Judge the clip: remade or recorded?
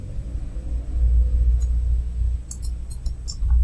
recorded